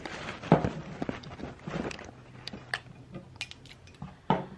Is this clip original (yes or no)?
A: yes